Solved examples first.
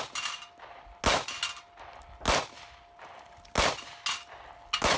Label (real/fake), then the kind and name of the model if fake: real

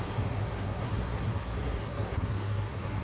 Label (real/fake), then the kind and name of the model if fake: fake, codec, SNAC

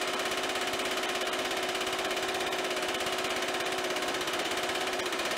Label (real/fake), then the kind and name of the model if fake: real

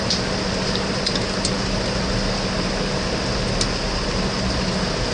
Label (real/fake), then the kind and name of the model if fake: real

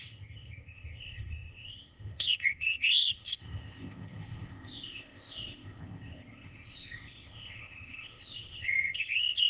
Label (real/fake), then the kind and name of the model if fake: fake, codec, ZipCodec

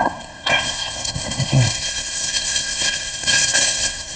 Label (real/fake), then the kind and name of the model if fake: fake, codec, SNAC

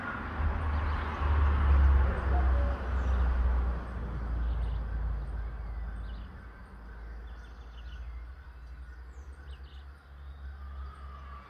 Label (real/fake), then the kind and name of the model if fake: real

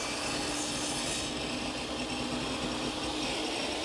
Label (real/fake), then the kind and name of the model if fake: real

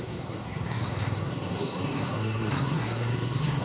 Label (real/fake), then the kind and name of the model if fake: fake, codec, SNAC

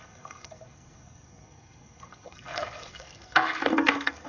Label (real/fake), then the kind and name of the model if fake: fake, codec, SNAC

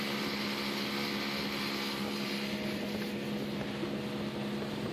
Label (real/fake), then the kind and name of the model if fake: real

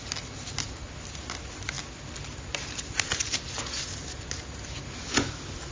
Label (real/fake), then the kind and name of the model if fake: real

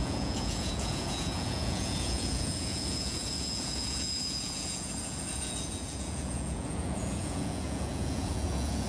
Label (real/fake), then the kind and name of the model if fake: fake, vocoder, Vocos